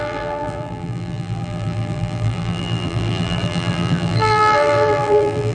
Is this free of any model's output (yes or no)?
no